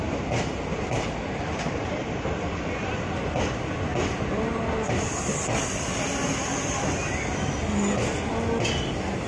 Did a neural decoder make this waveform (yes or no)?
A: no